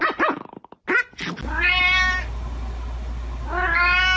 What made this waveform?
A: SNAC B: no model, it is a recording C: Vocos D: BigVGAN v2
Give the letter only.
B